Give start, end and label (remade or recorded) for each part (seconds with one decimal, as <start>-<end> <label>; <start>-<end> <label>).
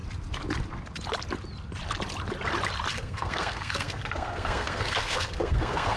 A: 0.0-2.9 recorded; 2.9-6.0 remade